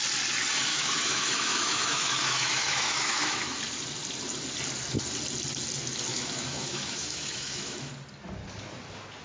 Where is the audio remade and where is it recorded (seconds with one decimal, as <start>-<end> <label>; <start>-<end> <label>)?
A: 0.0-0.7 recorded; 0.7-3.6 remade; 3.6-6.1 recorded; 6.1-7.9 remade; 7.9-9.2 recorded